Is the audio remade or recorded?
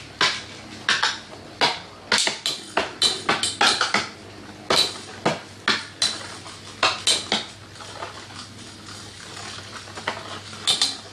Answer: recorded